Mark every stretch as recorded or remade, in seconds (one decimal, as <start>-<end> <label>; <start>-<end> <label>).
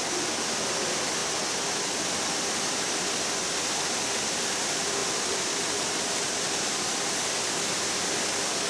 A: 0.0-5.0 recorded; 5.0-6.7 remade; 6.7-8.7 recorded